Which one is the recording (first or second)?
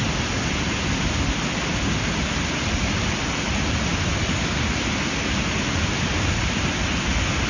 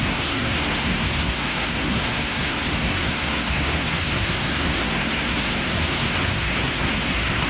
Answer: first